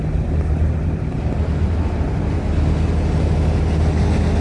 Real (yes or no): yes